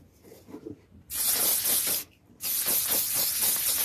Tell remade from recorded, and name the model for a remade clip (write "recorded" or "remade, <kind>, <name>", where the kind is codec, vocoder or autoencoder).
recorded